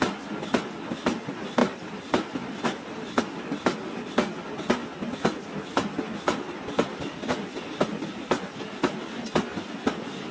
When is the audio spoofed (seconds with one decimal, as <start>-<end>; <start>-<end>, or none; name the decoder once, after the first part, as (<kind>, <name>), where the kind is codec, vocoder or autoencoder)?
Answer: 1.6-3.2 (vocoder, BigVGAN v2); 9.5-10.3